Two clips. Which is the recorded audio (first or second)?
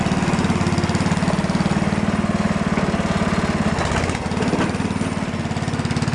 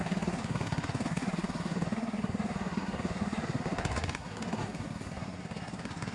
first